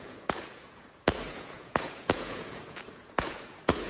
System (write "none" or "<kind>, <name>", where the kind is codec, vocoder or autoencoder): vocoder, Vocos